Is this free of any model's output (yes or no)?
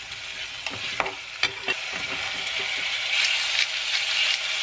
yes